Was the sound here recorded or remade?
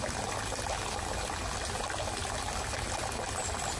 recorded